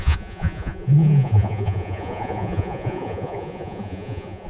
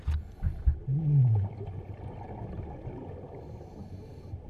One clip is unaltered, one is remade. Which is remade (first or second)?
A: first